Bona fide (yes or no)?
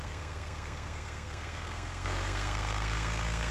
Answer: no